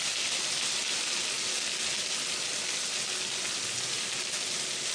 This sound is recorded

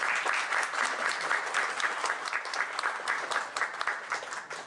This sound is recorded